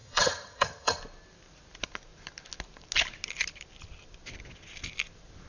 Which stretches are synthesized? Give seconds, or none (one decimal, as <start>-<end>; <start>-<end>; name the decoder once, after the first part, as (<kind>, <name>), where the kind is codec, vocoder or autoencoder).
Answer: 0.0-1.0 (vocoder, HiFi-GAN)